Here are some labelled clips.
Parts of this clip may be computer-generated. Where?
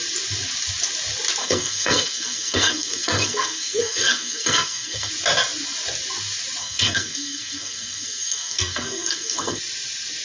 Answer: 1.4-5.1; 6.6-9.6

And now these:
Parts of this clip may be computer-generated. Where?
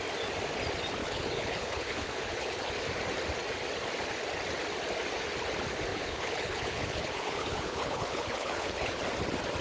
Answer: 1.0-2.7; 5.9-9.0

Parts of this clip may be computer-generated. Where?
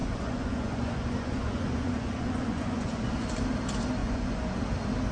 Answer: 0.0-3.1; 4.0-4.6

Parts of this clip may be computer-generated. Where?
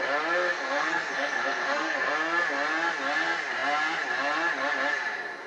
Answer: 0.5-2.1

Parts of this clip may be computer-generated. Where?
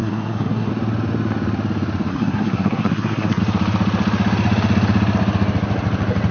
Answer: 0.0-0.7; 2.1-3.4